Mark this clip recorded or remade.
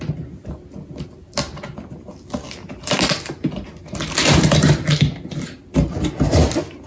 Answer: recorded